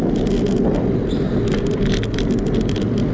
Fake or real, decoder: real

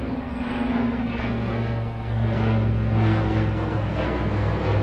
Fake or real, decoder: fake, codec, SNAC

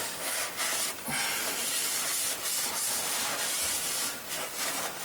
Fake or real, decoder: real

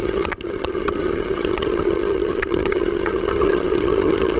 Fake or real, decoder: fake, vocoder, HiFi-GAN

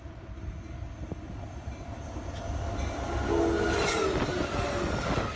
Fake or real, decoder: real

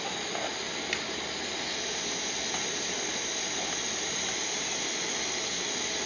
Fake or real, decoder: real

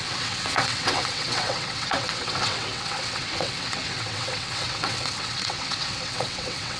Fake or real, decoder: fake, vocoder, WaveNeXt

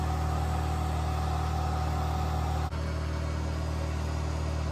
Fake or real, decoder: real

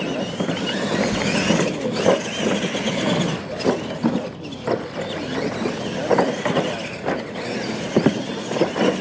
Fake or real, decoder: real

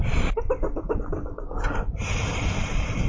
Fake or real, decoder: real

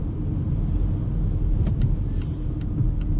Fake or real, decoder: real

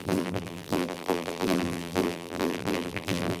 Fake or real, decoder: fake, vocoder, BigVGAN v2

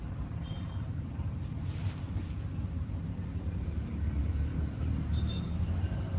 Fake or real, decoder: fake, vocoder, BigVGAN v2